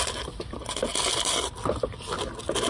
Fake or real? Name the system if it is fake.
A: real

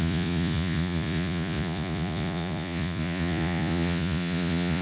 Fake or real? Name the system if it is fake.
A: fake, vocoder, Vocos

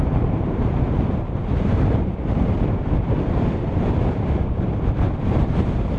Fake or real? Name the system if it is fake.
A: fake, vocoder, BigVGAN v2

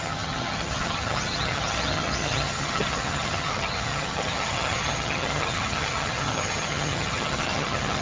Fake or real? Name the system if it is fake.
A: fake, vocoder, HiFi-GAN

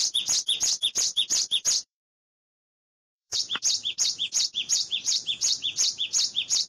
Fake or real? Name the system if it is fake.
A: fake, vocoder, Vocos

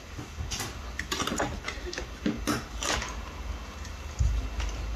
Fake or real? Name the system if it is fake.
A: real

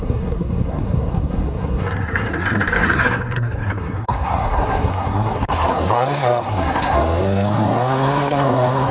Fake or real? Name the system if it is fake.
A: fake, codec, SNAC